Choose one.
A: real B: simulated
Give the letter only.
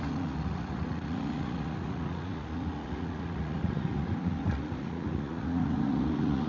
B